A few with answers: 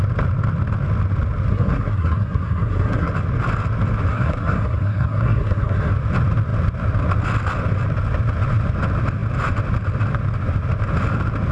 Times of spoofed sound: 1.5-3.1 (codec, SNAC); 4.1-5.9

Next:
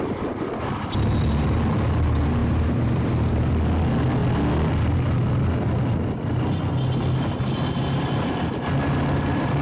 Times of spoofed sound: 2.4-3.5 (vocoder, BigVGAN v2)

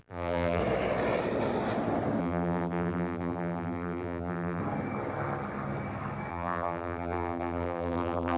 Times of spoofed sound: 0.0-0.6 (vocoder, BigVGAN v2); 2.2-4.6; 6.3-8.4